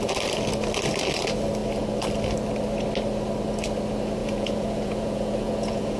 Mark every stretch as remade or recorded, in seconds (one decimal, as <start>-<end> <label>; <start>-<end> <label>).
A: 0.0-4.2 recorded; 4.2-6.0 remade